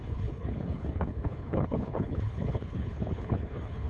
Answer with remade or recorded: remade